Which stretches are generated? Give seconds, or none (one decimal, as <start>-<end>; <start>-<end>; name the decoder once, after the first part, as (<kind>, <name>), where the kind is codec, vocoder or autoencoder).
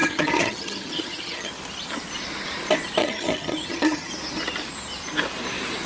0.0-1.5 (vocoder, HiFi-GAN); 3.0-4.1